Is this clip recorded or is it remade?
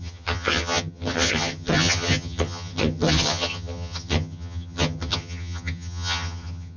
remade